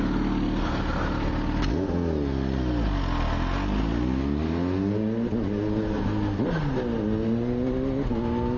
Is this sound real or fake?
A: real